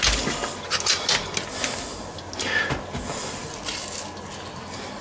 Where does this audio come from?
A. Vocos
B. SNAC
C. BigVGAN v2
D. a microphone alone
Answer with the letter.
D